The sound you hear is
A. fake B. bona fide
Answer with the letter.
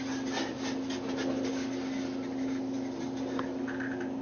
B